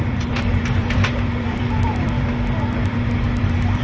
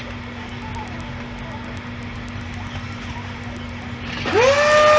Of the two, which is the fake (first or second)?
first